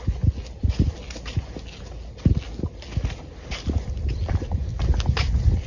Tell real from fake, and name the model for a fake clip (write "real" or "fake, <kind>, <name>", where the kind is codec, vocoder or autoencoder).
real